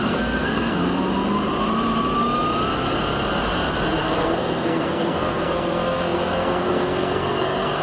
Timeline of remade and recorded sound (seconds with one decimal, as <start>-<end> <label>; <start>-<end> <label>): 0.0-0.8 remade; 0.8-4.0 recorded; 4.0-7.8 remade